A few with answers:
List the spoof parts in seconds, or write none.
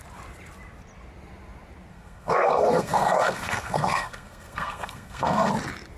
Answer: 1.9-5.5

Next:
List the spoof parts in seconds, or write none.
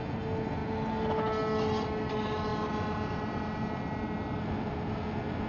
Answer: none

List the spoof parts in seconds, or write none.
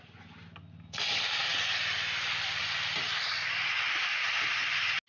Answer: none